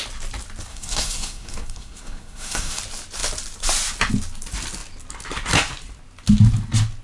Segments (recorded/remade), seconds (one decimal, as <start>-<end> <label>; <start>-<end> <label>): 0.0-0.7 recorded; 0.7-2.8 remade; 2.8-7.0 recorded